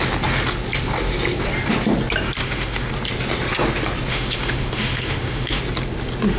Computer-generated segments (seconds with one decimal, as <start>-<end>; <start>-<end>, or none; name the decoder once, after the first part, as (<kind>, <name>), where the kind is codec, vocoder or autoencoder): 2.4-2.9 (autoencoder, DAC-VAE); 4.1-5.6